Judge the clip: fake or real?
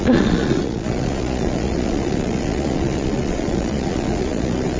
fake